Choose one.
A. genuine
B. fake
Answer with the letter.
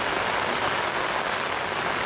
A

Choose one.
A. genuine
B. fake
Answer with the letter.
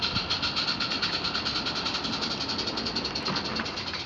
A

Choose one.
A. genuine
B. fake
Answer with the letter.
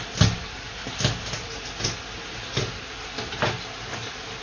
A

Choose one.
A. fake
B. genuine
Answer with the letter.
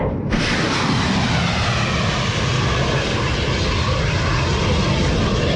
B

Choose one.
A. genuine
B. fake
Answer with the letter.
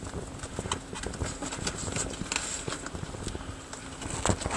A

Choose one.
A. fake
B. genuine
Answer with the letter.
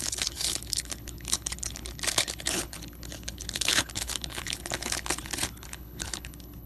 A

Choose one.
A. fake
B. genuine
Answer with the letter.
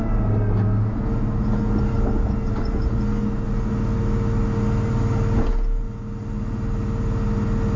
B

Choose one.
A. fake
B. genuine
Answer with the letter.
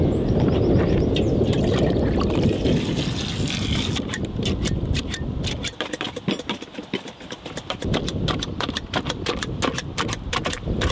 B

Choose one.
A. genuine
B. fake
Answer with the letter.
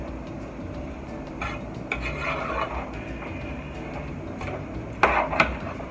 A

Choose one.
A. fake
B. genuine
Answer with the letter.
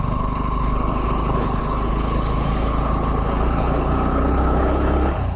A